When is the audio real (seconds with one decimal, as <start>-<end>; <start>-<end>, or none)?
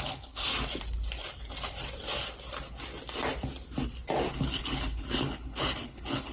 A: 0.5-4.3